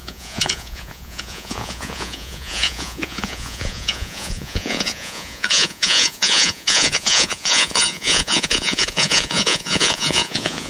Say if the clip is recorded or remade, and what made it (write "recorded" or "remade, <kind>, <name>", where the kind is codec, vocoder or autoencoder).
remade, vocoder, Vocos